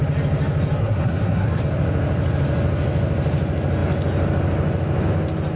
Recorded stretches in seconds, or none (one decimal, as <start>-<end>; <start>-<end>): 0.0-0.8; 1.6-5.6